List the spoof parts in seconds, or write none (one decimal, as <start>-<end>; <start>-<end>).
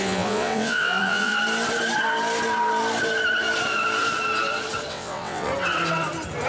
0.0-1.3; 4.9-5.5